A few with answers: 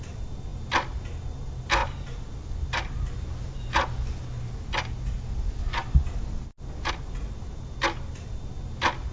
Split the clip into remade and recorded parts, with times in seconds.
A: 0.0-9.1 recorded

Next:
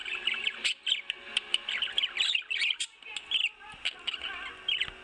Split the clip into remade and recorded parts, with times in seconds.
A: 0.0-3.0 remade; 3.0-5.0 recorded

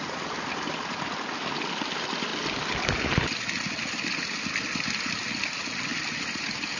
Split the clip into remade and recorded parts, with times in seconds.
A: 0.0-6.8 recorded

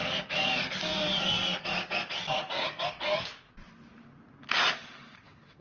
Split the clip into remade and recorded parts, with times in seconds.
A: 0.0-3.2 remade; 3.2-4.4 recorded; 4.4-5.6 remade

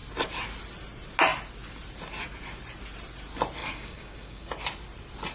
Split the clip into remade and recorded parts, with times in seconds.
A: 0.0-3.6 recorded; 3.6-4.5 remade; 4.5-5.3 recorded

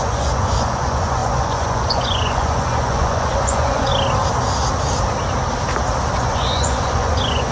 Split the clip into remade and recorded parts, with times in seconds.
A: 0.0-3.9 remade; 3.9-6.2 recorded; 6.2-7.5 remade

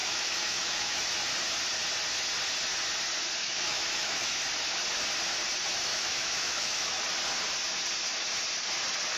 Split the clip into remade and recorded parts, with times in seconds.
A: 0.0-1.1 remade; 1.1-3.4 recorded; 3.4-4.3 remade; 4.3-5.9 recorded; 5.9-7.0 remade; 7.0-9.2 recorded

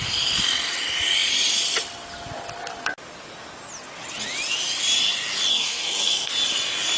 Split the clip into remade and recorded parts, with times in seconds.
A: 0.0-5.5 recorded; 5.5-6.3 remade; 6.3-7.0 recorded